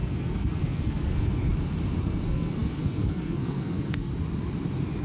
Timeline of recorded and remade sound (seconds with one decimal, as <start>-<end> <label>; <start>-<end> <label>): 0.0-1.4 remade; 1.4-2.0 recorded; 2.0-4.1 remade; 4.1-5.0 recorded

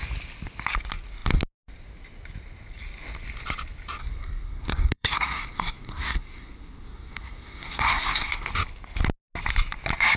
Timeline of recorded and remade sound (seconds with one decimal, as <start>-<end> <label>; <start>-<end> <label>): 0.0-4.0 recorded; 4.0-8.5 remade; 8.5-10.2 recorded